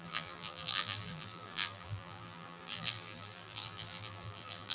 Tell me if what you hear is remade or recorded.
remade